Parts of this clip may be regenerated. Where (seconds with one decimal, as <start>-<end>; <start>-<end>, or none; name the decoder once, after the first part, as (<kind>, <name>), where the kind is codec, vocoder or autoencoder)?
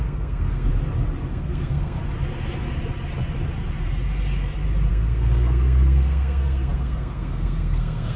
0.0-0.7 (codec, SNAC); 1.3-2.0; 4.9-8.2